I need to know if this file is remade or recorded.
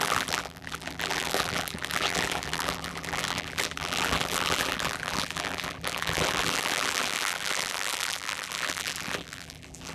remade